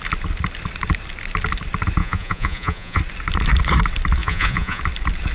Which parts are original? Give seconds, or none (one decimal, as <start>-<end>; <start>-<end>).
0.0-2.0; 3.0-4.2; 4.8-5.3